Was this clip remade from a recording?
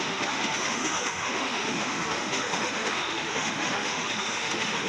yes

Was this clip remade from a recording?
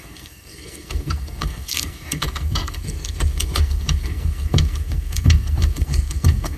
yes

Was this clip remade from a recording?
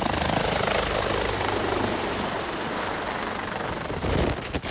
no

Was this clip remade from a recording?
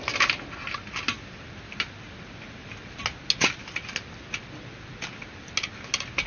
no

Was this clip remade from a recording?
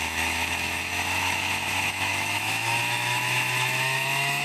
yes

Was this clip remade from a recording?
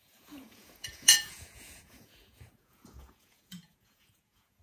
yes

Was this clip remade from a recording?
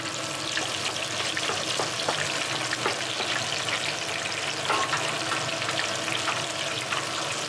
no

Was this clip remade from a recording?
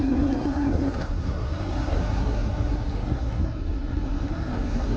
yes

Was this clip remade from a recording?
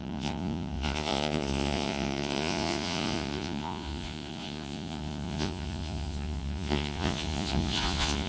yes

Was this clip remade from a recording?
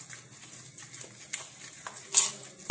no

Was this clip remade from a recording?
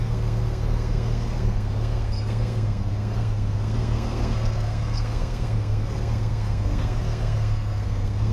yes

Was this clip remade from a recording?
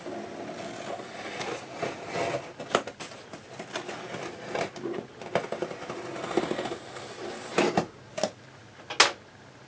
no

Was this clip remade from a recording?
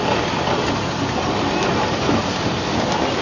no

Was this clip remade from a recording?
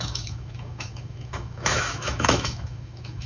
yes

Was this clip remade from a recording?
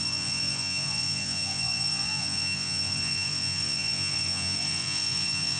yes